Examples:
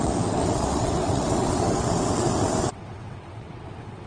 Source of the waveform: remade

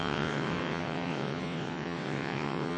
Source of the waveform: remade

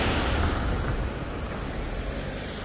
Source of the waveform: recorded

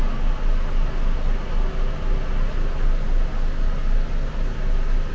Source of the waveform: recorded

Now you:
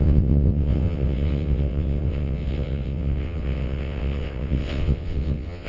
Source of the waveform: remade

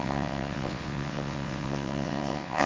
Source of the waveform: remade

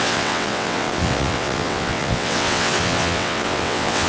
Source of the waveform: remade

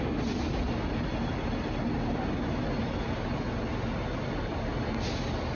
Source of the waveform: recorded